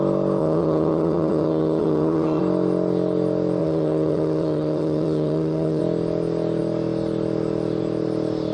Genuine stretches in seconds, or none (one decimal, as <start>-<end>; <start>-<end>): 0.0-0.4; 2.4-3.6; 5.8-8.5